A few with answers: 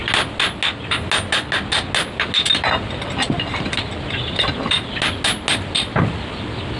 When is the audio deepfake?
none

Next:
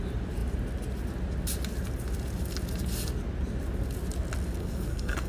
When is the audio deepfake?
4.6-5.3